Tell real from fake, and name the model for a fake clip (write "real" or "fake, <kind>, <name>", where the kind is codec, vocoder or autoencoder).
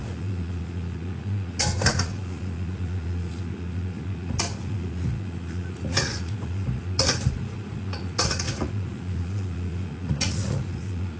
fake, vocoder, Vocos